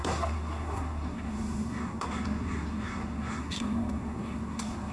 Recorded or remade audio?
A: remade